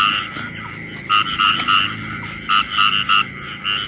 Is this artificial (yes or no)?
no